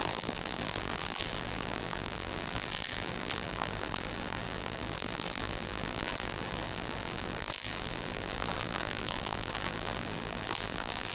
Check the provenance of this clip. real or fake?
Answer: fake